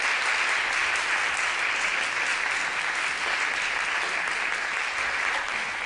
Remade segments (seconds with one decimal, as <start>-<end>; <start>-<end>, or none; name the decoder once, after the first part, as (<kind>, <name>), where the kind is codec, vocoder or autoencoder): 0.8-1.9 (vocoder, BigVGAN v2); 2.3-3.4